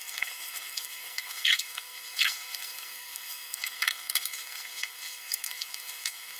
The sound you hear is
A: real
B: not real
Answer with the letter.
B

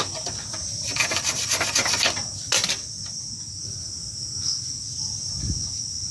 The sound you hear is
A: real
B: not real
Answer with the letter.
A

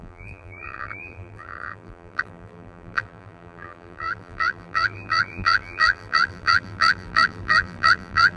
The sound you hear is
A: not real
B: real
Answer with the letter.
A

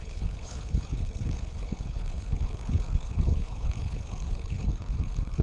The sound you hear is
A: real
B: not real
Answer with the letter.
B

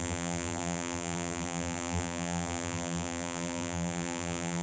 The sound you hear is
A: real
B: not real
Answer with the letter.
B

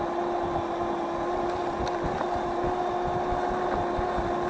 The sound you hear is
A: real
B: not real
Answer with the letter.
A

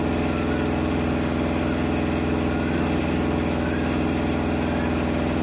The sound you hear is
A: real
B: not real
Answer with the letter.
A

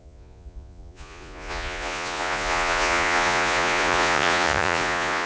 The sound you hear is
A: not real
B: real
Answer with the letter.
A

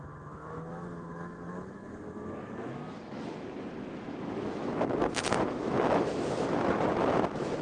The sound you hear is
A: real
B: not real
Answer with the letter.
B